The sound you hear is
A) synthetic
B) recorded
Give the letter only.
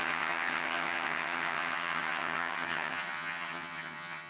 A